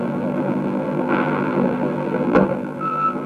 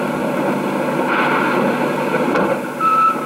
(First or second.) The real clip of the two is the second